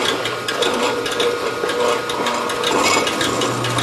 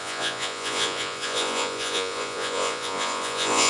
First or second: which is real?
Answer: first